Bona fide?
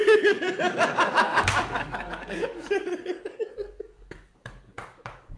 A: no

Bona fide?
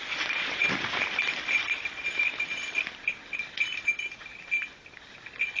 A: yes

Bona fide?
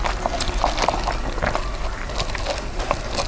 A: yes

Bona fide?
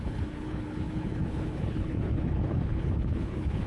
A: no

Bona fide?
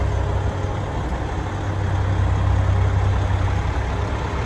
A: yes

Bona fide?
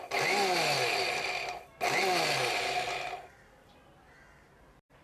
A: yes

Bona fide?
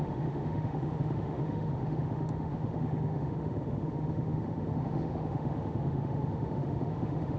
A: no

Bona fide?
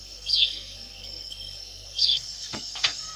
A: no